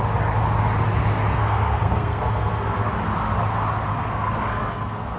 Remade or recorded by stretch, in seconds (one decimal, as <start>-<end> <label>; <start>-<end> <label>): 0.0-1.3 recorded; 1.3-2.9 remade; 2.9-3.9 recorded; 3.9-5.2 remade

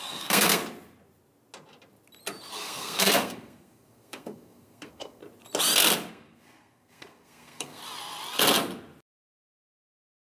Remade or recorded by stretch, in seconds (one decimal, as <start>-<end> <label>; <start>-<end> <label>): 0.0-0.6 remade; 0.6-2.5 recorded; 2.5-5.2 remade; 5.2-6.1 recorded; 6.1-7.8 remade; 7.8-9.4 recorded; 9.4-10.3 remade

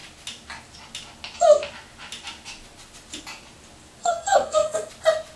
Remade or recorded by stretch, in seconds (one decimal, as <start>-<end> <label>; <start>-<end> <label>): 0.0-4.0 recorded; 4.0-4.9 remade; 4.9-5.4 recorded